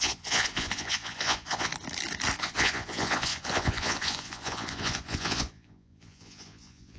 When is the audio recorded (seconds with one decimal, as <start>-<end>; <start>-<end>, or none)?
1.7-2.4